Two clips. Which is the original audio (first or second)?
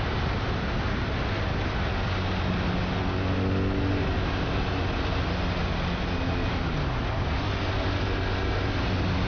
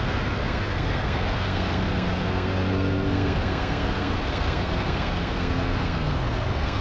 first